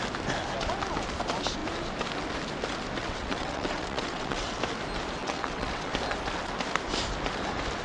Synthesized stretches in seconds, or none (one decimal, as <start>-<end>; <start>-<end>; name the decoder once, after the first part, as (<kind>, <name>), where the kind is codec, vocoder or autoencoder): 3.0-4.6 (vocoder, WaveNeXt); 5.2-5.9